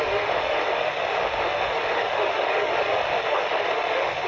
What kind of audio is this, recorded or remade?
remade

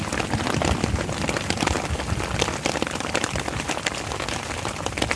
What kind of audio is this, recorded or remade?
recorded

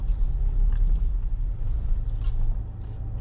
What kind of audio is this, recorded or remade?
recorded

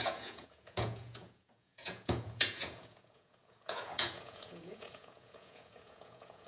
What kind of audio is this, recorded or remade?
remade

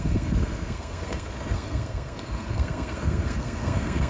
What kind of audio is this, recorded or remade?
remade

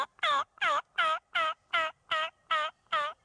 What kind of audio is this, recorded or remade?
recorded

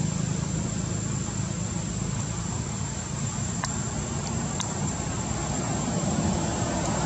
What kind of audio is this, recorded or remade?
recorded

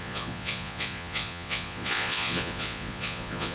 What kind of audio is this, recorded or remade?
remade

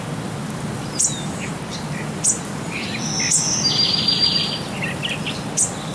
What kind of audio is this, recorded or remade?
recorded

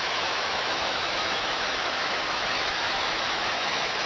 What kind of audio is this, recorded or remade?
remade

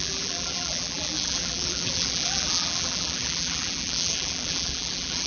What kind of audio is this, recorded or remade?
remade